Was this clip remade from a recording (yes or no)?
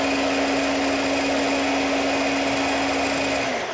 no